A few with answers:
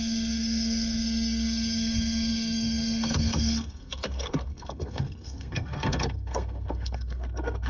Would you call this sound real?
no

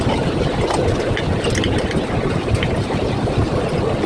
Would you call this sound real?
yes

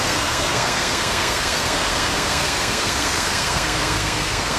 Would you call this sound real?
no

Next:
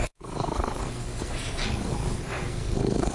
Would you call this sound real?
no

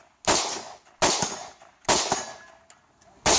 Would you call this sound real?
yes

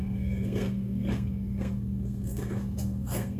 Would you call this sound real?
no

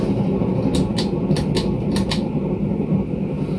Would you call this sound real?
yes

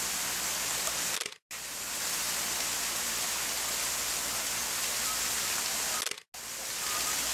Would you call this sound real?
yes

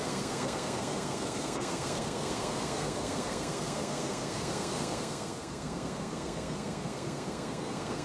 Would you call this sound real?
no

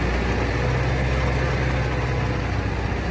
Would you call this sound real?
yes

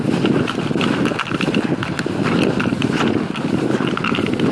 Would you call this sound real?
yes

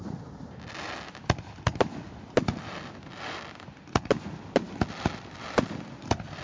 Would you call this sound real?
yes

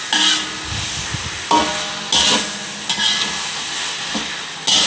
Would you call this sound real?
yes